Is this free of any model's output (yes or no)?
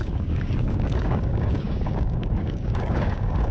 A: no